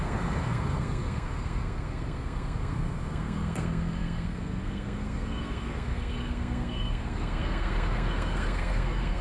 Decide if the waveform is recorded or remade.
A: remade